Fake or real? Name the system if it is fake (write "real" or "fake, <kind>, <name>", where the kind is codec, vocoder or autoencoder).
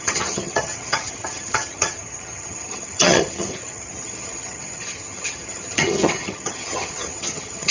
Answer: fake, vocoder, HiFi-GAN